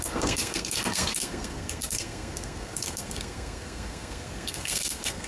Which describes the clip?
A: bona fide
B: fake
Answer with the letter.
B